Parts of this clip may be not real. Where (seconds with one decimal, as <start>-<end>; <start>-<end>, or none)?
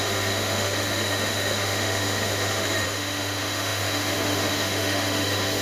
0.0-5.6